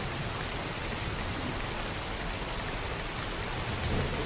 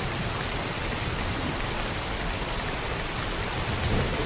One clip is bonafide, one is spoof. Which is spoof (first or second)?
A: second